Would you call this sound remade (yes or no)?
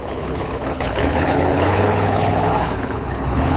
yes